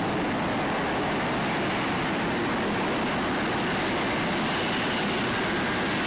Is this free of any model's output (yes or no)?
yes